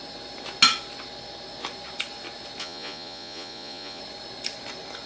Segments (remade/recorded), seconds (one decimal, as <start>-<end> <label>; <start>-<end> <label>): 0.0-2.6 recorded; 2.6-4.0 remade; 4.0-5.1 recorded

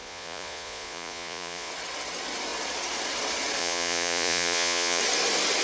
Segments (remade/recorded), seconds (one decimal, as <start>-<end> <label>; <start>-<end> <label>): 0.0-1.7 remade; 1.7-3.6 recorded; 3.6-5.0 remade; 5.0-5.6 recorded

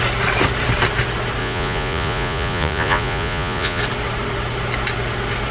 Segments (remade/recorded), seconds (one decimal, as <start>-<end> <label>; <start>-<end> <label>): 0.0-1.4 recorded; 1.4-3.8 remade; 3.8-5.5 recorded